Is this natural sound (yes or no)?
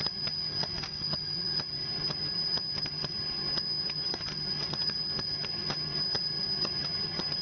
no